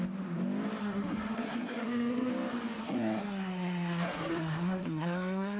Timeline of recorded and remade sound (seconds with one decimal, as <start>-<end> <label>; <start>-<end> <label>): 0.0-0.8 recorded; 0.8-2.3 remade; 2.3-2.8 recorded; 2.8-5.6 remade